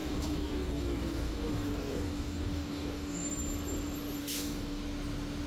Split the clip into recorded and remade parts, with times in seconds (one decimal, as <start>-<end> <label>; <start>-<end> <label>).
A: 0.0-3.3 remade; 3.3-4.2 recorded; 4.2-4.8 remade; 4.8-5.5 recorded